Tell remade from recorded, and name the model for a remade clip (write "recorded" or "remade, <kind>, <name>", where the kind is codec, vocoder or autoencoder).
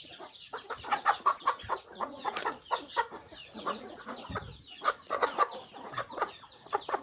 remade, vocoder, Vocos